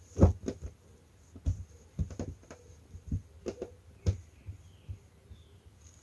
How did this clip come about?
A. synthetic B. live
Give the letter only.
B